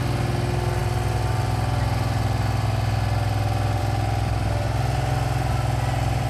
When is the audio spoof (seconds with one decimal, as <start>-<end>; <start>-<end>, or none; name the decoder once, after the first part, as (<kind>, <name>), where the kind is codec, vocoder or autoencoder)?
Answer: none